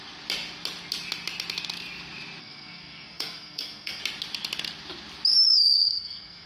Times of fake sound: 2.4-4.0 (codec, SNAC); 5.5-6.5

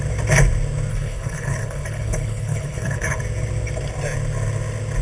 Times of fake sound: 0.9-3.2 (codec, HILCodec)